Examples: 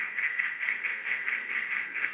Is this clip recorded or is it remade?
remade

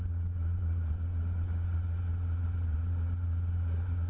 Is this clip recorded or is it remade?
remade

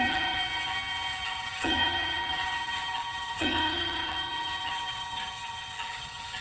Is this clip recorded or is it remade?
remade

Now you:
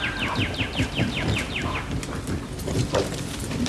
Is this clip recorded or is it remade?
recorded